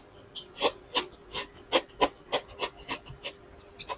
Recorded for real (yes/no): yes